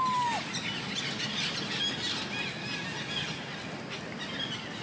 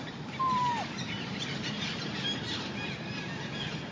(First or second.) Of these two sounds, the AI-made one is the second